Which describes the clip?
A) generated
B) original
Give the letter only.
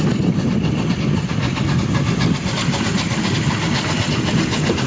B